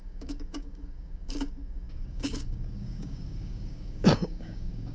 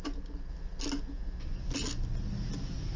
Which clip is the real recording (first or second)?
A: second